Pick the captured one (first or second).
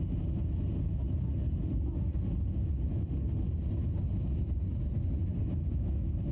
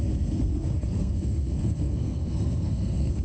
first